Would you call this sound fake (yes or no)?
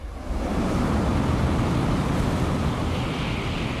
no